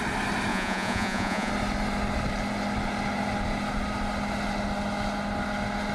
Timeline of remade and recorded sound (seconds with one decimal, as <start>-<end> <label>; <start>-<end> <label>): 0.0-0.5 recorded; 0.5-1.5 remade; 1.5-5.9 recorded